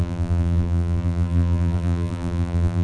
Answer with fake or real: fake